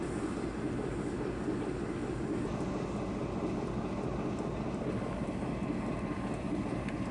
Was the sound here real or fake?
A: real